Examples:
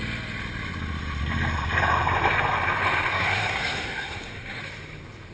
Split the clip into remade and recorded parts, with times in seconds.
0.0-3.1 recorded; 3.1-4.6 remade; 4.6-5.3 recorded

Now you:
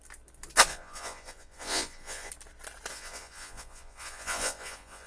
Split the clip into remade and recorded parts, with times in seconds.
0.0-0.7 recorded; 0.7-2.3 remade; 2.3-2.9 recorded; 2.9-5.1 remade

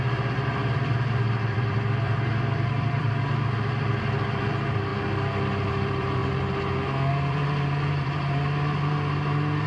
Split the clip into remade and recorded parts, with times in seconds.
0.0-4.9 remade; 4.9-5.7 recorded; 5.7-6.2 remade; 6.2-7.1 recorded; 7.1-9.7 remade

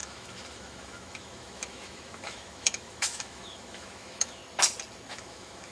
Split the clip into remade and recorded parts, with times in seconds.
0.0-4.4 remade; 4.4-5.1 recorded; 5.1-5.7 remade